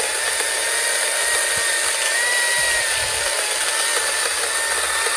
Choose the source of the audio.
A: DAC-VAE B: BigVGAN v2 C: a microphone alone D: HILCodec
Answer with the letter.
C